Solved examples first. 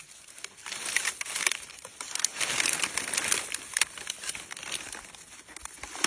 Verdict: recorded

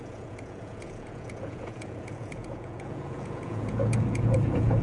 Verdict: remade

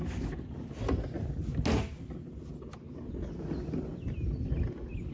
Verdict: recorded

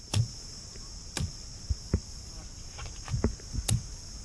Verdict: recorded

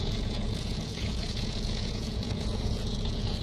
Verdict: remade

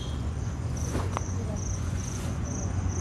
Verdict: remade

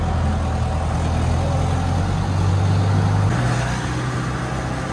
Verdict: recorded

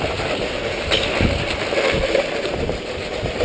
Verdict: recorded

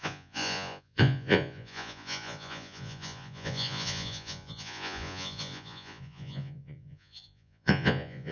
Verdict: remade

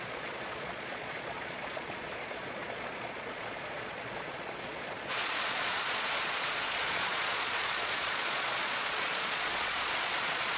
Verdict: remade